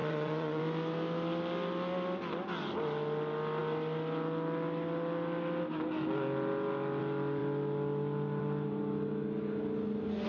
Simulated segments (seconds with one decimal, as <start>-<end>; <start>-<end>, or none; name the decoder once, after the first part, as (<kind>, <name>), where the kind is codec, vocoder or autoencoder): 0.0-0.6 (vocoder, WaveNeXt)